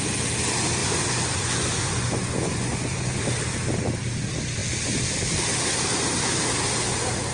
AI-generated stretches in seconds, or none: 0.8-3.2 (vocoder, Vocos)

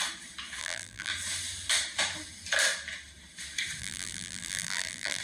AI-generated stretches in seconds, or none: 0.6-1.1 (vocoder, BigVGAN v2); 3.8-5.2

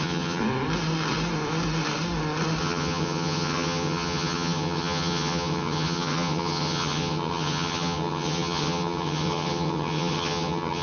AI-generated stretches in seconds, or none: 0.0-0.4 (vocoder, HiFi-GAN); 2.6-10.8

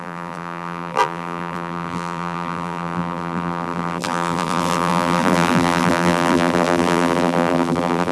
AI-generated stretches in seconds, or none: 0.0-8.1 (vocoder, BigVGAN v2)

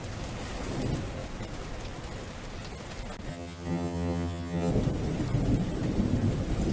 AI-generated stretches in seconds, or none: 3.3-4.7 (vocoder, HiFi-GAN)